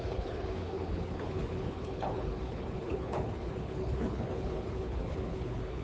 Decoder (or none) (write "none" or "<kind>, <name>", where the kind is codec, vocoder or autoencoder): codec, HILCodec